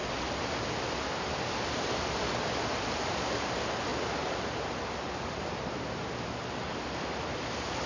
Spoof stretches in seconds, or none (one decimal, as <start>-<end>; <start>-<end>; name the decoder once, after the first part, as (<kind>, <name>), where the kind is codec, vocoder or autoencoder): none

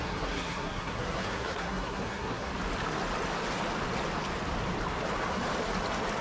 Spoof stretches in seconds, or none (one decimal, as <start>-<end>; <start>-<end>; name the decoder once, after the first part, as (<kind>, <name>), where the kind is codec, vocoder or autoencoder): 0.0-2.5 (codec, SNAC)

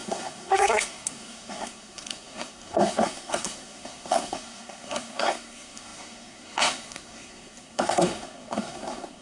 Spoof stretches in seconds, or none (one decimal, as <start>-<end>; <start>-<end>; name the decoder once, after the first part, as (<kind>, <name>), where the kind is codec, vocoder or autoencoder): 0.0-9.2 (codec, SNAC)

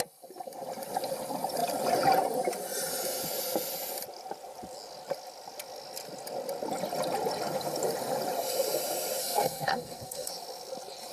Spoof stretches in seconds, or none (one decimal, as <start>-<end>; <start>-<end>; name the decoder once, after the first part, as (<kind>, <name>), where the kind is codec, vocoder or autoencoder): 9.2-10.3 (codec, SNAC)

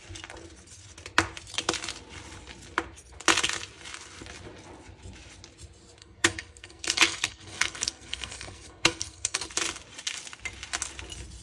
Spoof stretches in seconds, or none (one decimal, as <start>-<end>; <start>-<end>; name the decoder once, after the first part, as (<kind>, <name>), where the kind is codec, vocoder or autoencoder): 6.0-9.5 (codec, SNAC)

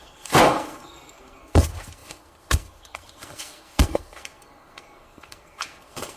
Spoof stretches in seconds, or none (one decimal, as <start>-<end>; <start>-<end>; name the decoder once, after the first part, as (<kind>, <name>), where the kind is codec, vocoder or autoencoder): 0.0-6.2 (codec, SNAC)